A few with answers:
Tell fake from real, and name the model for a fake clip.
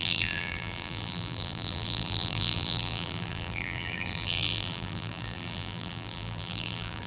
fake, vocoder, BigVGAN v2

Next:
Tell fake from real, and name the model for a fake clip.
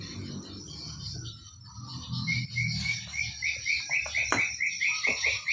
real